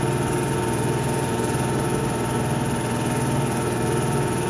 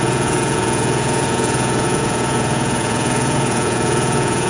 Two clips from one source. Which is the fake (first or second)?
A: second